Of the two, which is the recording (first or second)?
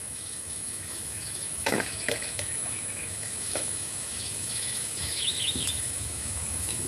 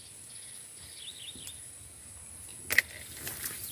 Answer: second